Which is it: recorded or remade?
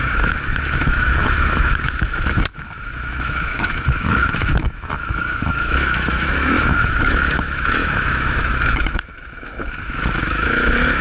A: remade